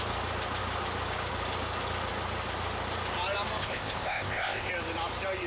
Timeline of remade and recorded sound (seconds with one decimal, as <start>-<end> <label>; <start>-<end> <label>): 0.0-3.6 recorded; 3.6-4.7 remade; 4.7-5.5 recorded